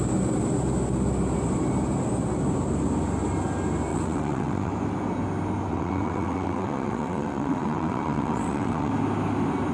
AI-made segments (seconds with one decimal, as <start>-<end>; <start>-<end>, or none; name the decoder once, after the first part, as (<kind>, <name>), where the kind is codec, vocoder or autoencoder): 3.9-4.7 (vocoder, WaveNeXt); 5.7-8.9